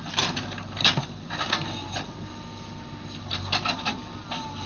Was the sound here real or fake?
real